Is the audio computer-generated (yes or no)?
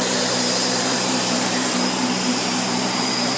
yes